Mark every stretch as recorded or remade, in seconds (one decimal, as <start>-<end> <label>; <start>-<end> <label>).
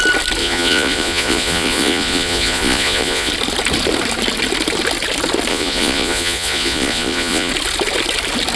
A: 0.0-0.4 recorded; 0.4-3.3 remade; 3.3-5.5 recorded; 5.5-7.5 remade; 7.5-8.6 recorded